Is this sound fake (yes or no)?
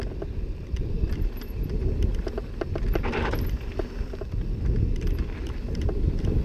no